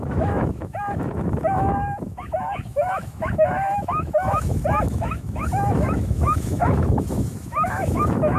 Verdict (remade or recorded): remade